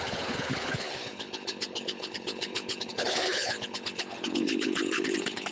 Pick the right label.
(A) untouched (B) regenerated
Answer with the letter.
B